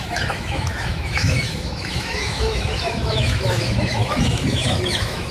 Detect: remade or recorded remade